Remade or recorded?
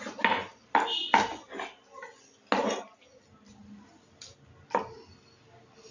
recorded